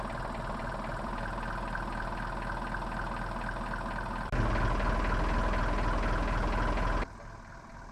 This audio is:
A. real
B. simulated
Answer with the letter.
A